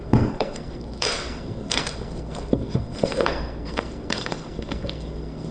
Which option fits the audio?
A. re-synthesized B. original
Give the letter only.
A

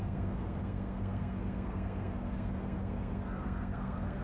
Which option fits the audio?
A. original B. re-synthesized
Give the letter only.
B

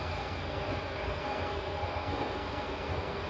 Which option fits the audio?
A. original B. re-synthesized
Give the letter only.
B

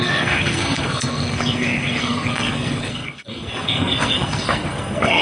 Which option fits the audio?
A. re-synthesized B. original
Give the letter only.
A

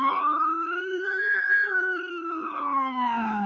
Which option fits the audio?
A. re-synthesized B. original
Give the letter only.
A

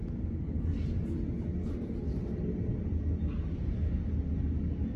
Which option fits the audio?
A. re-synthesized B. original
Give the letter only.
B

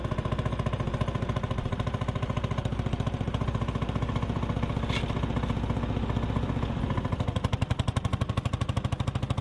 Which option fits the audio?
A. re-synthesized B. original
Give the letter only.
B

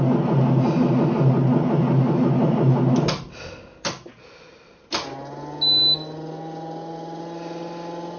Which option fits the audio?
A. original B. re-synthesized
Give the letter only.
A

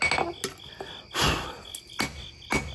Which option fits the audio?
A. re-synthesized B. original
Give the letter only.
B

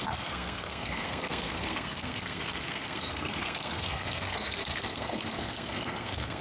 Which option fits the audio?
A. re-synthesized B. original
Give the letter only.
A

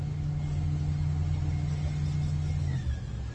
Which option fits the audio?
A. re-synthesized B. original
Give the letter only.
B